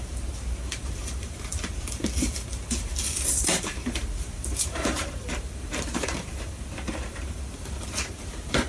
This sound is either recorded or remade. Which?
remade